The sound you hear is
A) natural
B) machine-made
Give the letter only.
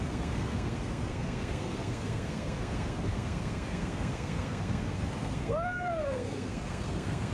B